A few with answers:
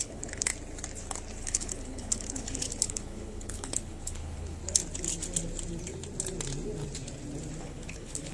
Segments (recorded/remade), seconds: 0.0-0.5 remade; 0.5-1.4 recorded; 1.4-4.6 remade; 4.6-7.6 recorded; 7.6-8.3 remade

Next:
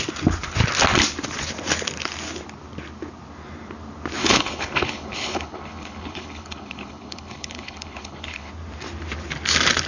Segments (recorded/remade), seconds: 0.0-4.2 recorded; 4.2-8.5 remade; 8.5-9.9 recorded

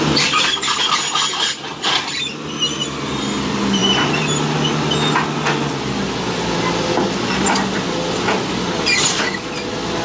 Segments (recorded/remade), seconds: 0.0-10.0 recorded

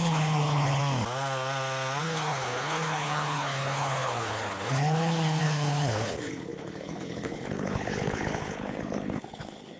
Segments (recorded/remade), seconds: 0.0-0.8 remade; 0.8-2.0 recorded; 2.0-9.8 remade

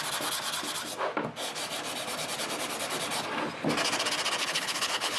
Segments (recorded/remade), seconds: 0.0-4.4 recorded; 4.4-5.2 remade